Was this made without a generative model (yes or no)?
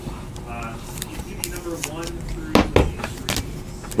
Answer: yes